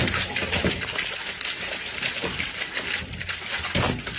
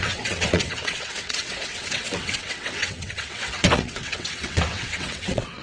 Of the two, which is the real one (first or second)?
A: first